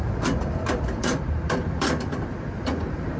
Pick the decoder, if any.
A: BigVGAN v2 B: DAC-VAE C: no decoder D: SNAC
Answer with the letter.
A